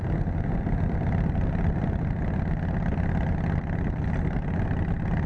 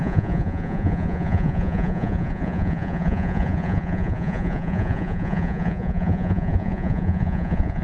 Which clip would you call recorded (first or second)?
first